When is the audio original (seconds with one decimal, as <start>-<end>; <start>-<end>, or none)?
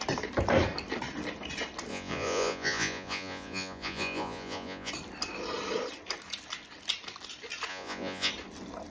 0.0-1.9; 4.9-7.7; 8.3-8.9